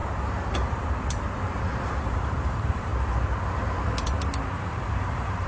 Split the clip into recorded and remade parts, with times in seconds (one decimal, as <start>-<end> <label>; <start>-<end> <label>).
0.0-1.9 recorded; 1.9-2.9 remade; 2.9-4.6 recorded; 4.6-5.5 remade